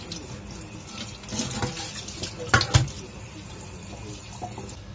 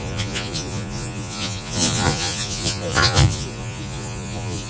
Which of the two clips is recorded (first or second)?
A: first